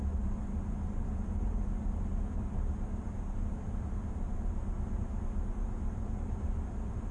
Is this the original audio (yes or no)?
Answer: yes